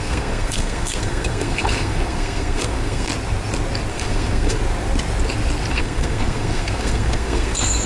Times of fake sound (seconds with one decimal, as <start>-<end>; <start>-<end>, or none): 0.0-3.1; 3.9-4.6; 5.7-7.9

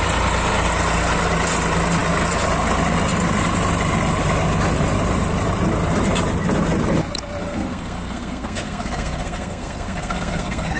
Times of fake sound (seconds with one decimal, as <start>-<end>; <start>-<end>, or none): 7.4-10.8

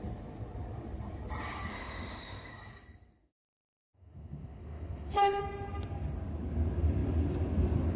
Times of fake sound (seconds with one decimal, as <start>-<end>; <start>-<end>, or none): 1.7-2.5; 3.2-5.4

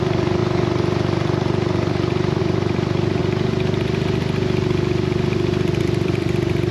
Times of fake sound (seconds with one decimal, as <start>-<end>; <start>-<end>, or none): 0.0-0.4; 2.4-3.2; 5.8-6.7

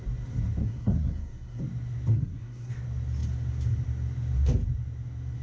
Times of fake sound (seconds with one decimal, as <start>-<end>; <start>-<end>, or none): 0.6-1.6; 2.1-2.7